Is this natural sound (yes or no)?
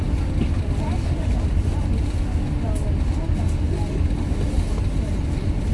yes